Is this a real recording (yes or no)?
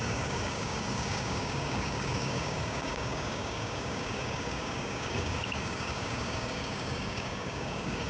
no